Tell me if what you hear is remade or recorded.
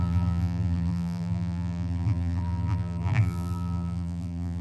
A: remade